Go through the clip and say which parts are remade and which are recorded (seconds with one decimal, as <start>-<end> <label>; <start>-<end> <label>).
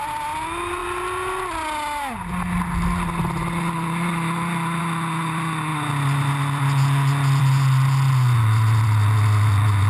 0.0-9.9 recorded